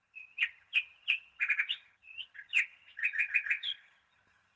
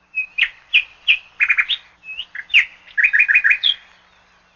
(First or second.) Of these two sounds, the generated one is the first